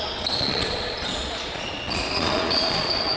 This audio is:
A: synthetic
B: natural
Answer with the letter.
A